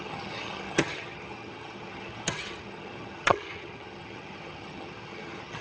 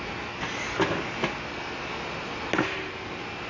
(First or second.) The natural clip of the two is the second